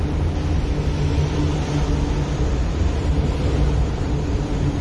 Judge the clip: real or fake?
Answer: real